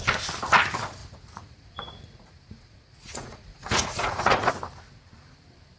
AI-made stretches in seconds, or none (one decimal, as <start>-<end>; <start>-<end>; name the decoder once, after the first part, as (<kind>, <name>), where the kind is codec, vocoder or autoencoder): 1.0-4.5 (vocoder, Vocos)